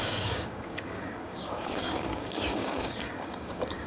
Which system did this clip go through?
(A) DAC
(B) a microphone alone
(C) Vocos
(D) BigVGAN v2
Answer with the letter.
A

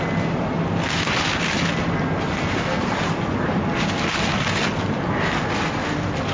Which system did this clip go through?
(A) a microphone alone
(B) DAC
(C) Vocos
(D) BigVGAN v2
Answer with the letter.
A